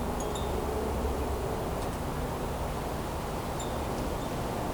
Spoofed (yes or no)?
no